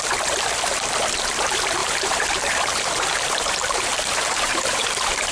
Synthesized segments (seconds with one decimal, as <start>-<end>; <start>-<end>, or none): 1.8-5.3